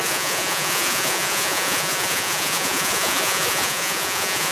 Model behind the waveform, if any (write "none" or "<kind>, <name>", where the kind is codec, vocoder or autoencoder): vocoder, Vocos